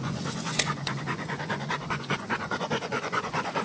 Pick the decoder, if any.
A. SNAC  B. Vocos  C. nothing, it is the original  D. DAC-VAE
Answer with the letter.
B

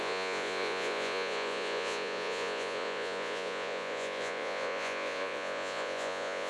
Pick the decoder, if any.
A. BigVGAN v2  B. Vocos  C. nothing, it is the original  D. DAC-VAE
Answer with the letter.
B